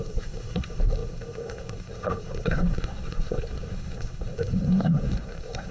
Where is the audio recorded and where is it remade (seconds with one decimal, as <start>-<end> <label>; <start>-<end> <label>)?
0.0-5.7 remade